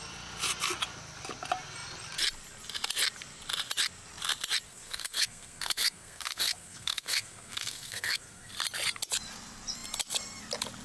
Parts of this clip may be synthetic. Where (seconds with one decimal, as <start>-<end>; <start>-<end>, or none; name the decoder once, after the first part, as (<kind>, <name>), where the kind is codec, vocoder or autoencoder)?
4.7-8.5 (codec, SNAC)